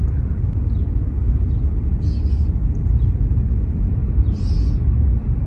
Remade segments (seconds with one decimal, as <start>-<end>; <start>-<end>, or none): none